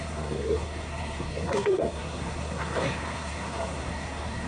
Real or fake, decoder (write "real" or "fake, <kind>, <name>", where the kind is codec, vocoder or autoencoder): fake, codec, SNAC